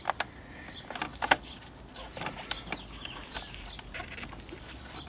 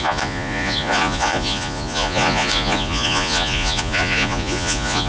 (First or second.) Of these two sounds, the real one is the first